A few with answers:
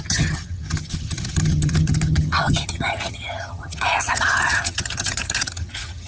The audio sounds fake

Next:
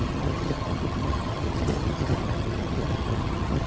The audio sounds fake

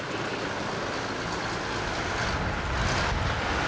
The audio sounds real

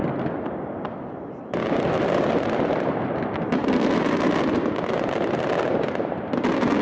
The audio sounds real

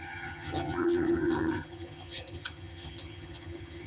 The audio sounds fake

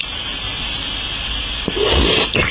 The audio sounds real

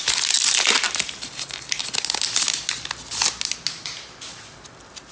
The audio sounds real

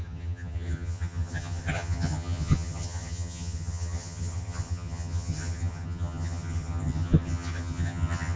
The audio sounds fake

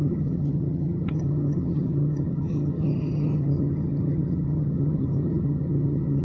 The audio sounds fake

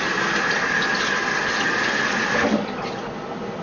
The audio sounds real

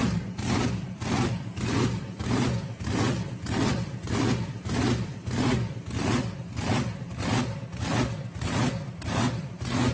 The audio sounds real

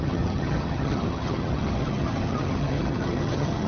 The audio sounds fake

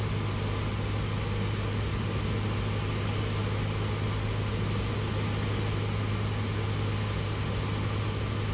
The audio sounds real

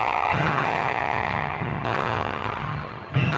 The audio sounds fake